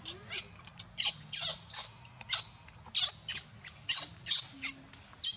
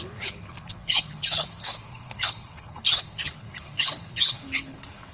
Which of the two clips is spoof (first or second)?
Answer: second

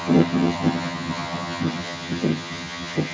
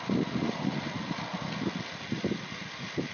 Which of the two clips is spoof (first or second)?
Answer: first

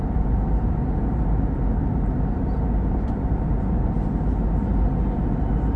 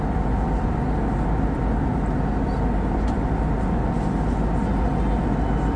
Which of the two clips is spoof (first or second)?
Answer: first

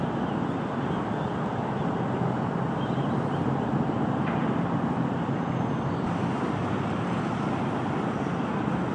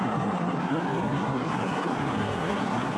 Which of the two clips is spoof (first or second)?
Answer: second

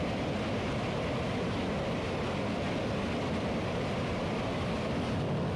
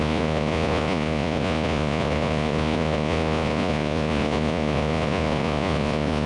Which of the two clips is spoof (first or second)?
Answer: second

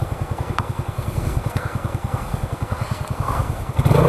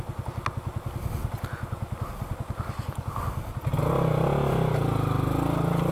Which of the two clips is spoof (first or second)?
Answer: first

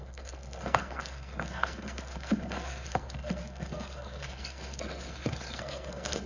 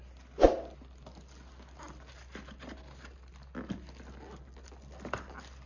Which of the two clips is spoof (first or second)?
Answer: first